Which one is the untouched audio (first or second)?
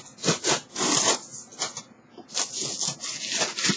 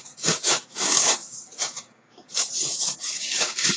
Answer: first